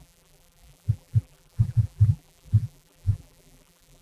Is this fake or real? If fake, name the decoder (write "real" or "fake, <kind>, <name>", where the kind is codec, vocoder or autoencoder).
fake, vocoder, BigVGAN v2